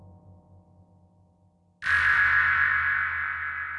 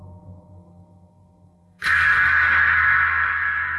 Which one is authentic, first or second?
first